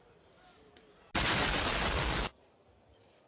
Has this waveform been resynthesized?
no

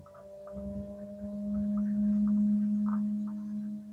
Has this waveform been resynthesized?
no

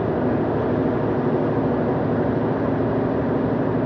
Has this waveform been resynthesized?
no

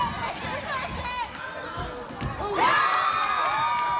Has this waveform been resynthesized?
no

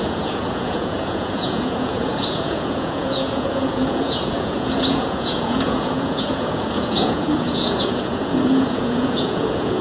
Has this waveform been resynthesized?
yes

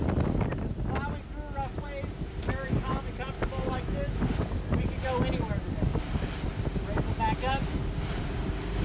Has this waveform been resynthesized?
no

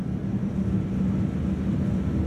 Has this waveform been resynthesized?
no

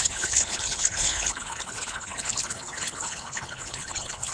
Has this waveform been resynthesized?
yes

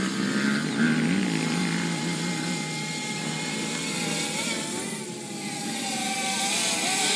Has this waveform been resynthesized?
no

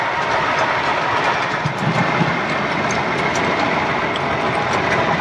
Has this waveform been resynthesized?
no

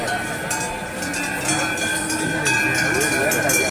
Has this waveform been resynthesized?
no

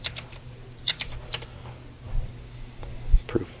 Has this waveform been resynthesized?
no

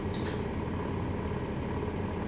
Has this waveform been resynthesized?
no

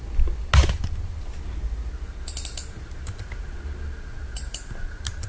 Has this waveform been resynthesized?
no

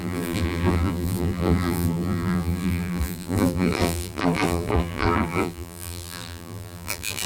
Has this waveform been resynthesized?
yes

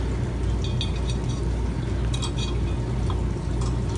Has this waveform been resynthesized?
no